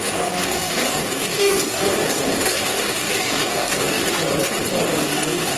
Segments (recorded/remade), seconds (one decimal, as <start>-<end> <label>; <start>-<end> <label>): 0.0-4.0 remade; 4.0-4.9 recorded; 4.9-5.6 remade